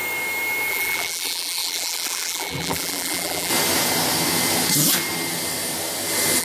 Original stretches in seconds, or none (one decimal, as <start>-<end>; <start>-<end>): 0.0-0.7; 3.5-6.4